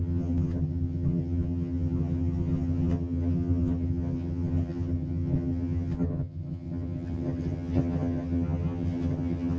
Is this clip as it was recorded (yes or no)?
no